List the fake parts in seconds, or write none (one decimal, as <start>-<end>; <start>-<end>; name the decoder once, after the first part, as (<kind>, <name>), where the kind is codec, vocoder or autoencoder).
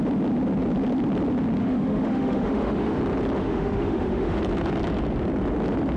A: 1.6-3.0 (autoencoder, DAC-VAE); 3.4-4.4